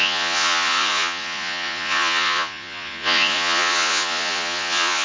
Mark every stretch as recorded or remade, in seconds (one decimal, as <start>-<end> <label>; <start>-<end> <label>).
0.0-5.0 remade